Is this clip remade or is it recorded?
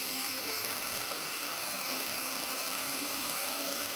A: remade